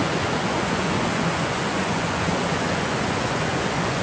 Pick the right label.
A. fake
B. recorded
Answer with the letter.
A